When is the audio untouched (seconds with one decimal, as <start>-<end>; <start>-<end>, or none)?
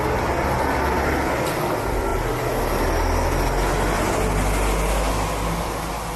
0.0-6.2